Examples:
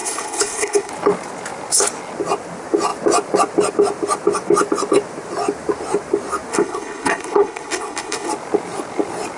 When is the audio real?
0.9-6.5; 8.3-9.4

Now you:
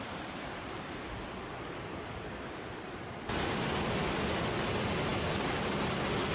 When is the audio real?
0.0-6.3

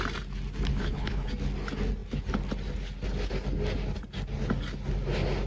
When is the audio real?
0.0-0.7; 1.3-5.5

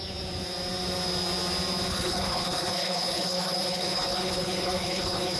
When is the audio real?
0.0-1.9

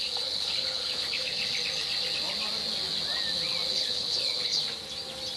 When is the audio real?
1.4-3.7; 4.6-5.4